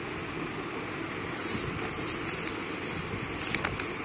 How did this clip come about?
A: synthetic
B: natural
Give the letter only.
B